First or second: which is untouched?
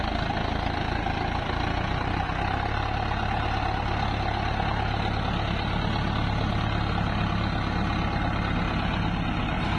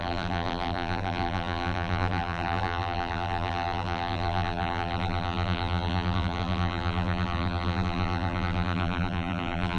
first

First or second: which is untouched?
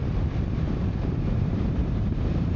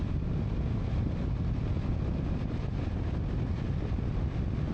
second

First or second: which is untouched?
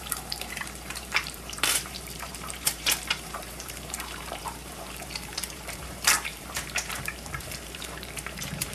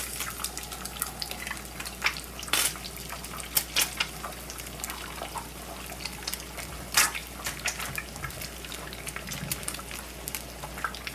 second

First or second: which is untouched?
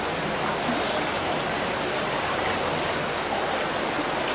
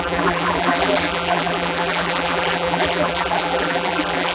first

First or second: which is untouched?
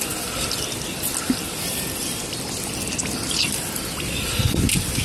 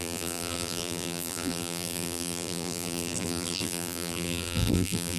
first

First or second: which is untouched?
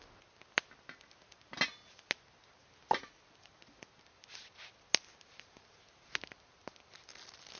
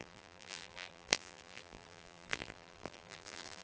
first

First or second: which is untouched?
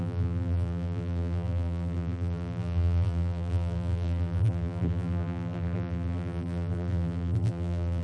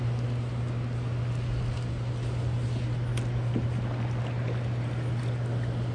second